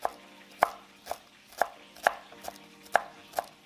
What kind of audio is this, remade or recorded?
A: recorded